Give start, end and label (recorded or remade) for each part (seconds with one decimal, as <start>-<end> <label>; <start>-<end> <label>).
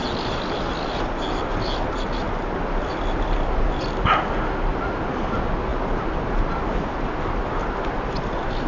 0.0-8.7 recorded